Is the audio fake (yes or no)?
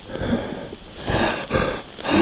no